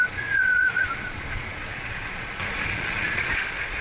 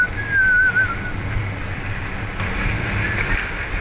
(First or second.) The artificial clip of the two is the first